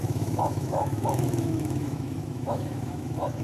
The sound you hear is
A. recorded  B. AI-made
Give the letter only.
B